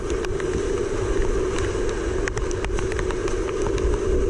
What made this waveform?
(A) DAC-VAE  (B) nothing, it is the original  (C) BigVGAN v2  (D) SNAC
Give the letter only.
B